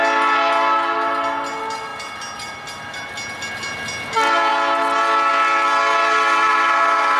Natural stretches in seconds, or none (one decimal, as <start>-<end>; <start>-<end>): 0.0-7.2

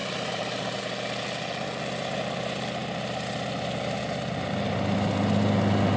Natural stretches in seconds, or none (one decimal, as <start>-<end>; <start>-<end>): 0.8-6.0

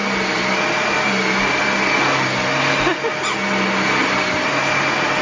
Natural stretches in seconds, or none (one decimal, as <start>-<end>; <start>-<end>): 0.0-5.2

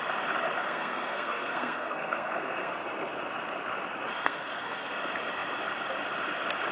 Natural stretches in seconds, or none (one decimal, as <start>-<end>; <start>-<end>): 0.0-0.6; 2.7-4.2; 4.9-6.7

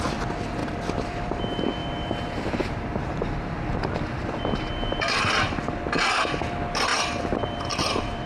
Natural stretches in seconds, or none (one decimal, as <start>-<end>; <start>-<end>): 0.0-0.6; 1.4-1.8; 5.2-6.9

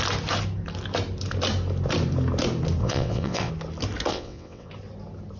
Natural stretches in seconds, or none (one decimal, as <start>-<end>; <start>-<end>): 0.0-2.8; 3.5-4.1; 4.7-5.4

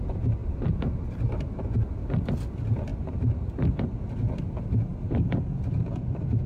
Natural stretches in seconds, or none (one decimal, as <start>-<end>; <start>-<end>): 0.0-0.4; 2.2-2.9; 4.3-6.5

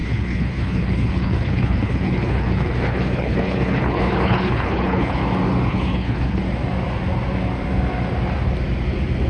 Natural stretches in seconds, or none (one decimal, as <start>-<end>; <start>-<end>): 5.2-5.7; 6.4-9.3